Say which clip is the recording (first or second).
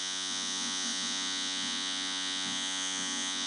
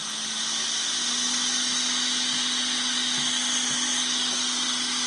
second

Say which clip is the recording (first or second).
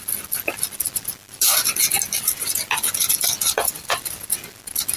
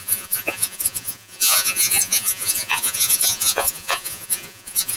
first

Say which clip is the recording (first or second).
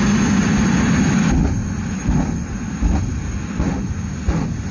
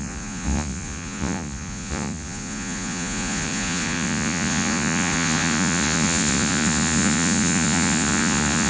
first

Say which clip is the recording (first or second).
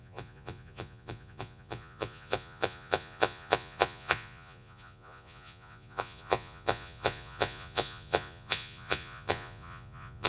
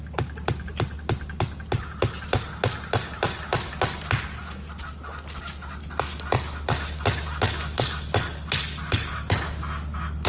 second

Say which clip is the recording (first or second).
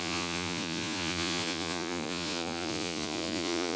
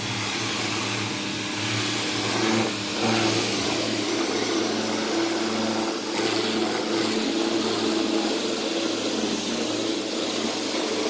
second